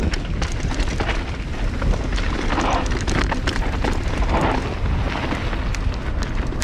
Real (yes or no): yes